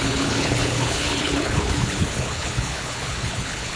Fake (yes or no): yes